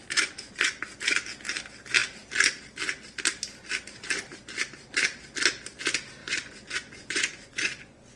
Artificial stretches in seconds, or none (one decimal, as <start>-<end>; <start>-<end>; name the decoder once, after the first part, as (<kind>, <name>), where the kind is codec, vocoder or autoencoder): 0.0-0.7 (vocoder, Vocos); 6.2-8.2